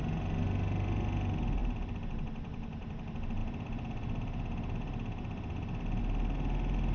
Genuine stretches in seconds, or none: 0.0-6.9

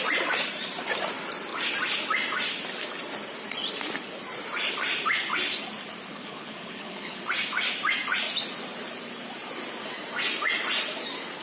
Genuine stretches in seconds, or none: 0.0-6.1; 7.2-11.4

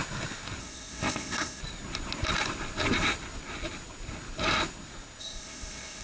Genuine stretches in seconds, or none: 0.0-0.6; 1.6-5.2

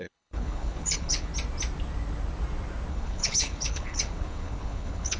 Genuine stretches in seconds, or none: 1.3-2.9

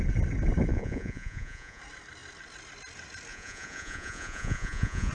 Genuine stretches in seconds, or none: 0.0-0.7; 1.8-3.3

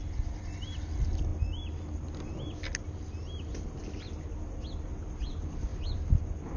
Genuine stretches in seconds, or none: 0.0-6.6